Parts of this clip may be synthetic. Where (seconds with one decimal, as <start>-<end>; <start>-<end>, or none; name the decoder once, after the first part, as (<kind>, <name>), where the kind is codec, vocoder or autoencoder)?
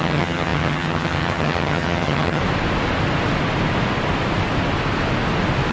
0.0-2.4 (vocoder, HiFi-GAN)